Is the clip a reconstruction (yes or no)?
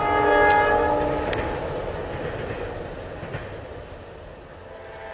no